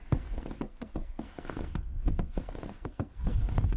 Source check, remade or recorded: remade